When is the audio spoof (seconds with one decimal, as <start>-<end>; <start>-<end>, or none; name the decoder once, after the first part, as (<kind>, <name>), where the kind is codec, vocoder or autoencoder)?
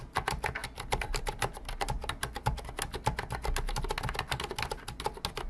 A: none